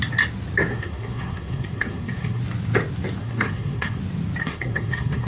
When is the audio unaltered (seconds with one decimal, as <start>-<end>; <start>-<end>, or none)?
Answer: 0.0-0.7; 2.4-3.2; 4.0-4.4